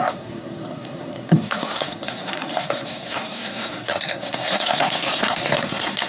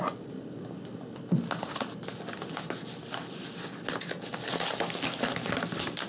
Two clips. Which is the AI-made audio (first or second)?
first